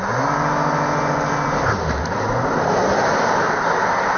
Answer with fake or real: real